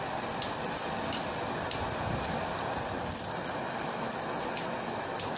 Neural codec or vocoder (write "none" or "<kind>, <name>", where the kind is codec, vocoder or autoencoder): none